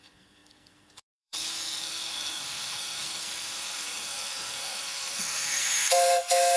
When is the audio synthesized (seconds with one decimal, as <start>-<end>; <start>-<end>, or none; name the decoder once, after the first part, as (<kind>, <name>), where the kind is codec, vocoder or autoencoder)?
0.0-6.6 (codec, SNAC)